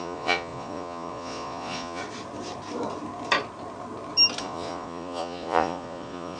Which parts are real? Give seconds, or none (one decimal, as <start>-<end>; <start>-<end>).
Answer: 2.0-4.4